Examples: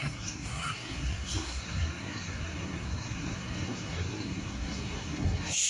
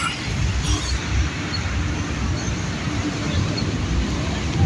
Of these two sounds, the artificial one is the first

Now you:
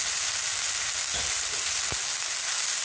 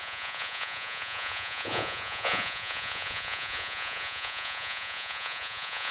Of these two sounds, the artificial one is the second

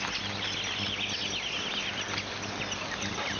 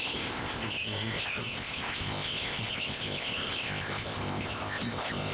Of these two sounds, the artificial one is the second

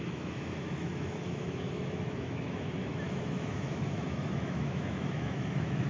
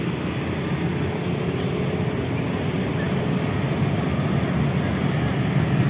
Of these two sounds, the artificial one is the first